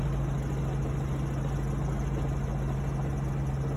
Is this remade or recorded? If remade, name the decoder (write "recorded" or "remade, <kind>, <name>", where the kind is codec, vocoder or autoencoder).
recorded